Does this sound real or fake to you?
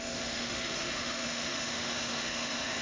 fake